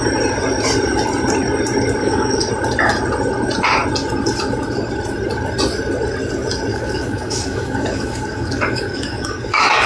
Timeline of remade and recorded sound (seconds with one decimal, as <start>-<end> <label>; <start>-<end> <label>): 0.0-2.0 recorded; 2.0-2.5 remade; 2.5-6.7 recorded; 6.7-9.9 remade